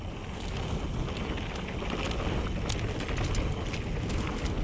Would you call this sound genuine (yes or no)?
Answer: yes